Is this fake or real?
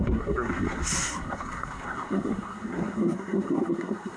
fake